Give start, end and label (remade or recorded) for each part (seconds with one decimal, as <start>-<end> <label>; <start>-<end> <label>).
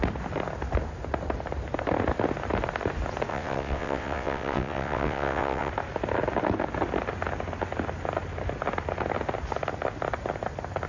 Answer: 0.0-3.3 recorded; 3.3-5.7 remade; 5.7-10.9 recorded